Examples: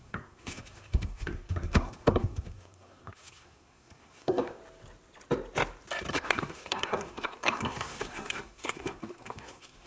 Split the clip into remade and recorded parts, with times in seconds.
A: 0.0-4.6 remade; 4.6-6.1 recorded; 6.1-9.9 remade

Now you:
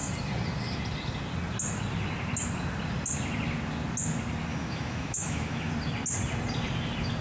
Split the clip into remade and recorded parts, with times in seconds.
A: 0.0-4.5 recorded; 4.5-5.7 remade; 5.7-7.2 recorded

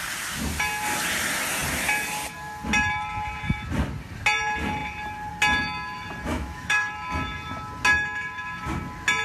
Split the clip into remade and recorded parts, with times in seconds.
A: 0.0-6.3 recorded; 6.3-6.9 remade; 6.9-9.2 recorded

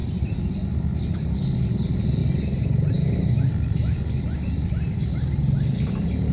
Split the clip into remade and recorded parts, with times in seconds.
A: 0.0-6.3 recorded

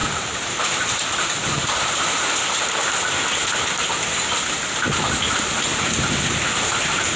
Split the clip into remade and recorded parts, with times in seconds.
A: 0.0-4.3 remade; 4.3-5.7 recorded; 5.7-7.2 remade

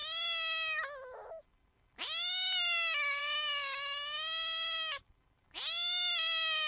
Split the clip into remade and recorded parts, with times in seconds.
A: 0.0-6.7 recorded

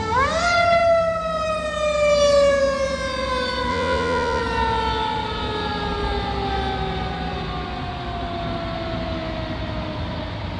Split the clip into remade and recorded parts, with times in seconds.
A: 0.0-3.7 recorded; 3.7-4.4 remade; 4.4-10.6 recorded